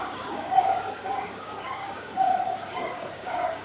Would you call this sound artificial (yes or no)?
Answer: yes